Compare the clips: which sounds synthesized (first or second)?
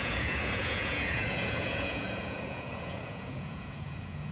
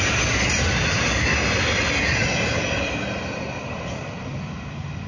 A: first